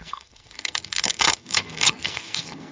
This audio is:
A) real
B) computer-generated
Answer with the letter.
B